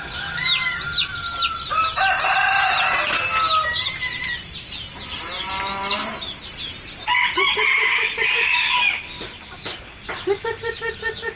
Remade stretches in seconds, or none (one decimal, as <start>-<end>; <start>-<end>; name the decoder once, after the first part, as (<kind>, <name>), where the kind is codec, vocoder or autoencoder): none